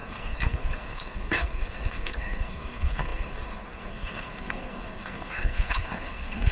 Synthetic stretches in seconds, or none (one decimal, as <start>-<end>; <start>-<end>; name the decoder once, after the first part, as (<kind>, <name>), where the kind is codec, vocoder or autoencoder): 0.0-6.5 (codec, SNAC)